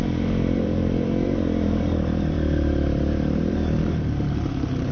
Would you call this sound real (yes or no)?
no